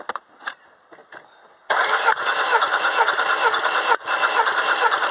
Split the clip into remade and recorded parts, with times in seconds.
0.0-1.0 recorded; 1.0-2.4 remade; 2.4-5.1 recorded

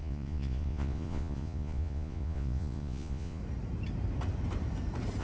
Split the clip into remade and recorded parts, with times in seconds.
0.0-3.4 remade; 3.4-5.2 recorded